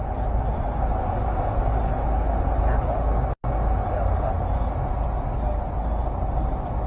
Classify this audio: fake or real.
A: real